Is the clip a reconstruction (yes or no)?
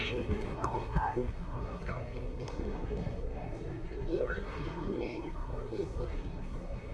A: yes